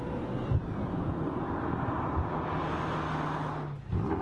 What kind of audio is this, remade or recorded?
recorded